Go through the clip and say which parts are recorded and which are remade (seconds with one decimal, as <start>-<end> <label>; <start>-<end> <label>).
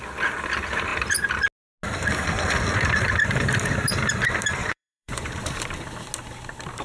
0.0-4.6 recorded; 4.6-5.3 remade; 5.3-6.8 recorded